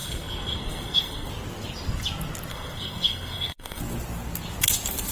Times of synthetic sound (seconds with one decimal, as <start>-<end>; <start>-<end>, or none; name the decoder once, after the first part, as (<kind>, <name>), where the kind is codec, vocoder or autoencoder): 0.0-1.3 (codec, SNAC); 2.5-3.8